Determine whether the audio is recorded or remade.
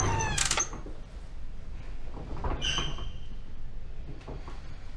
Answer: recorded